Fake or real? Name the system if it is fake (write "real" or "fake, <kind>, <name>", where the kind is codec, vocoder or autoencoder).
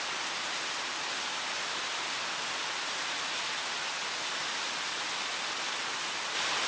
real